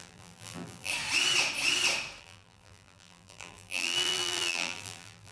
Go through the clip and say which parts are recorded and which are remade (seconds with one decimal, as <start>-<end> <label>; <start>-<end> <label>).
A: 0.0-0.9 remade; 0.9-2.2 recorded; 2.2-5.3 remade

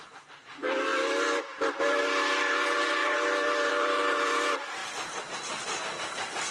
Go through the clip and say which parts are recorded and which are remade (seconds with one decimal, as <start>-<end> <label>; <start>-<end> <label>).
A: 0.0-4.8 remade; 4.8-5.8 recorded; 5.8-6.5 remade

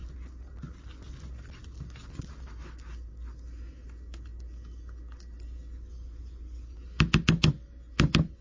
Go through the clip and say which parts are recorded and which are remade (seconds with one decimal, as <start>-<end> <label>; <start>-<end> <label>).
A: 0.0-8.4 recorded

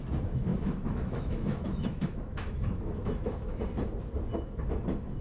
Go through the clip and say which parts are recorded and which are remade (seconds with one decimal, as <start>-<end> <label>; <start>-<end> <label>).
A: 0.0-0.5 recorded; 0.5-3.6 remade; 3.6-5.2 recorded

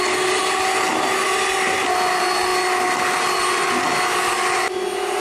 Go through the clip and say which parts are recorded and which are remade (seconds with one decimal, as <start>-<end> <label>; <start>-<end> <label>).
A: 0.0-5.2 recorded

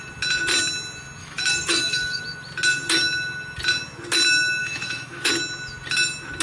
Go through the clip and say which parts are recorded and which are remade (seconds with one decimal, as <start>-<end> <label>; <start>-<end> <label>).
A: 0.0-1.2 recorded; 1.2-2.2 remade; 2.2-4.6 recorded; 4.6-5.3 remade; 5.3-6.4 recorded

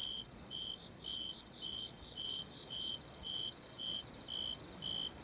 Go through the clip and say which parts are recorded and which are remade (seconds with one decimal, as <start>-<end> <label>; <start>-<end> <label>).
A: 0.0-0.7 remade; 0.7-1.1 recorded; 1.1-4.0 remade; 4.0-5.2 recorded